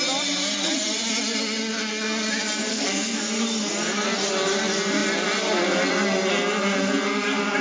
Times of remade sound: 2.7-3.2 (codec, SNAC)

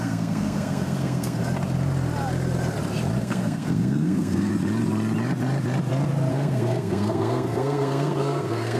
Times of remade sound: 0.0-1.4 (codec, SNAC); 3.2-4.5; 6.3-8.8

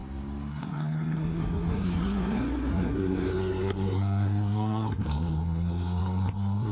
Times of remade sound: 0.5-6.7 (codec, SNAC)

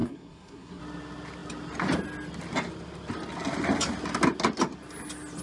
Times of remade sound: 0.0-0.8 (codec, SNAC)

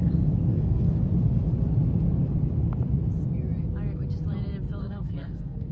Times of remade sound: 0.5-1.1 (codec, SNAC); 4.8-5.7

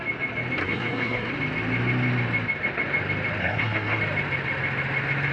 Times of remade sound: 0.6-1.3 (codec, SNAC); 3.4-4.0